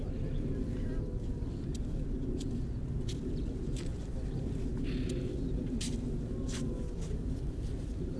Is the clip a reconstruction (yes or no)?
no